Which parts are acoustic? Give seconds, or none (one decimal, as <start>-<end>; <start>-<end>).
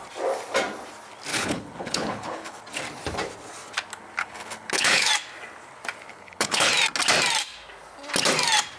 0.0-1.3; 2.6-4.2; 5.1-6.1; 6.7-8.8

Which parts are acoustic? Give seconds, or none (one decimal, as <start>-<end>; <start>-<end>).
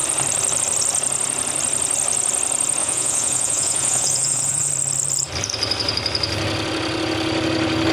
0.0-2.8; 4.7-7.9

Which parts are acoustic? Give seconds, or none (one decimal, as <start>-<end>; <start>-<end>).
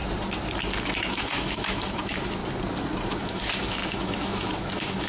0.0-0.8; 2.4-3.1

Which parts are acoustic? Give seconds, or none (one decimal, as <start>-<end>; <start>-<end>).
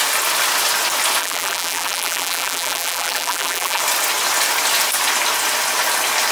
0.0-1.2; 3.8-6.3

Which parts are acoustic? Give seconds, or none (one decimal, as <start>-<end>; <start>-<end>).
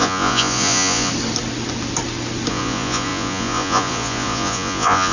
1.1-2.5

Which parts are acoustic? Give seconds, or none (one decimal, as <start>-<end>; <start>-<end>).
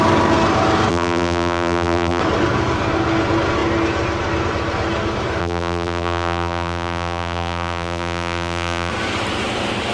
0.0-0.9; 2.2-5.4; 8.9-9.9